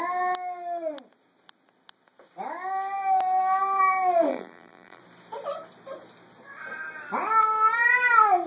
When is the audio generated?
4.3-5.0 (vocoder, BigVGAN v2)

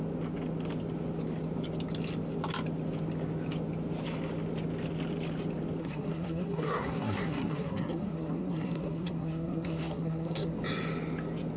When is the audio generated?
5.8-10.6 (codec, SNAC)

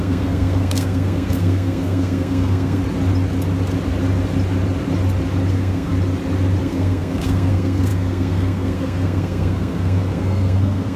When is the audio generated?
0.0-2.8 (codec, SNAC); 5.5-5.9; 6.6-11.0

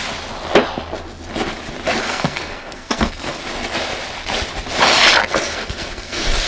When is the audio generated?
2.0-3.4 (codec, SNAC); 5.2-6.5

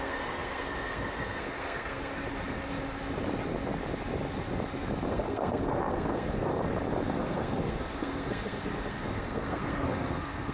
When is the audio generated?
0.0-2.1 (codec, SNAC); 5.1-6.5; 7.1-10.5

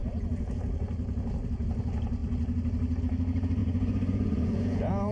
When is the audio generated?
3.6-5.1 (vocoder, Vocos)

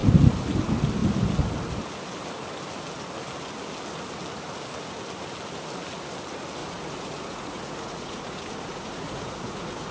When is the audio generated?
6.6-9.9 (vocoder, Vocos)